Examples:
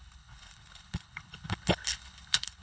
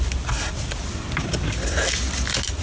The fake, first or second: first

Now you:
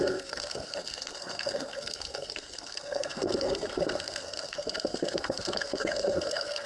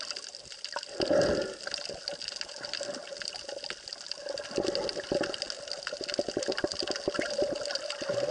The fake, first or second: first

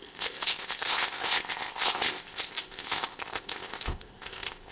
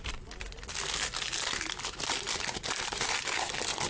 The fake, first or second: first